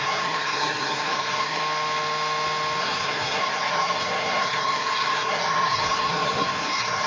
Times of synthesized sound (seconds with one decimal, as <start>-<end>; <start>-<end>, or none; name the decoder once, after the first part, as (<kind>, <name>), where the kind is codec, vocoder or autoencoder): 0.0-1.6 (codec, SNAC); 2.8-7.1